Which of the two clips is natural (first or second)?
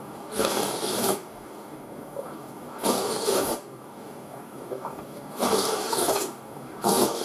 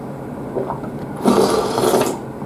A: second